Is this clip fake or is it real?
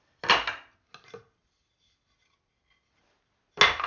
real